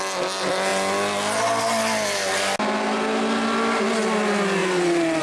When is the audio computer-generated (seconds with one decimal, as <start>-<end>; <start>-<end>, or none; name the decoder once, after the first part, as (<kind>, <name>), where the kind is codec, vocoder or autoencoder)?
none